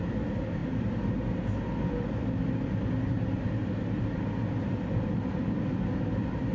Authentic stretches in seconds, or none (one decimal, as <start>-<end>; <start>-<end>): 0.0-6.5